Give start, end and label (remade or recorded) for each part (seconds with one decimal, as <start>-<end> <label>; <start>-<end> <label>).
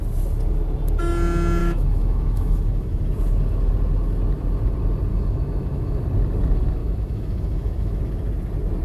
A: 0.0-1.6 recorded; 1.6-3.0 remade; 3.0-5.1 recorded; 5.1-6.0 remade; 6.0-6.8 recorded; 6.8-8.0 remade; 8.0-8.8 recorded